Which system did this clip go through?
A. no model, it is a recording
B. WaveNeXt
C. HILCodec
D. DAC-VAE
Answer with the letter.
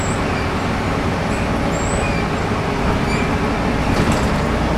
A